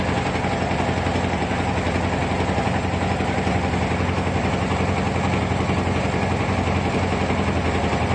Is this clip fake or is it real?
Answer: real